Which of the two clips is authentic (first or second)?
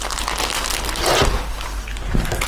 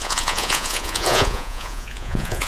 first